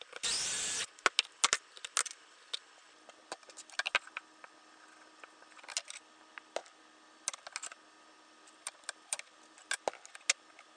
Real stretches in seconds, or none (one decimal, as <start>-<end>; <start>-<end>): 0.0-10.8